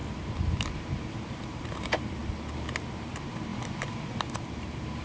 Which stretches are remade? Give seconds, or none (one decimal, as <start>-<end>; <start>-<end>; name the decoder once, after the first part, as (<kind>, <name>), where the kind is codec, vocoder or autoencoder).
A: 0.0-2.2 (vocoder, BigVGAN v2); 2.9-5.0